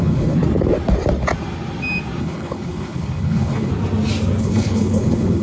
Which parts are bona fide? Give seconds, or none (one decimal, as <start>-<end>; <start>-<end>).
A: 0.4-2.2; 3.7-4.4